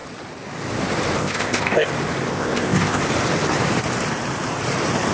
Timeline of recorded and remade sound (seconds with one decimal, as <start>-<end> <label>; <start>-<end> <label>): 0.0-1.2 recorded; 1.2-1.9 remade; 1.9-2.3 recorded; 2.3-3.0 remade; 3.0-5.1 recorded